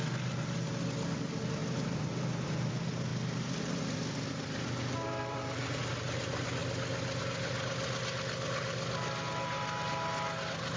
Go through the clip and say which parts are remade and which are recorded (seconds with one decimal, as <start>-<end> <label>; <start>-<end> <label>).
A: 0.0-1.6 recorded; 1.6-2.7 remade; 2.7-3.1 recorded; 3.1-5.8 remade; 5.8-10.8 recorded